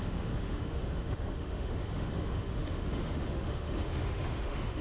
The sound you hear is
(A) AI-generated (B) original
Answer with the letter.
A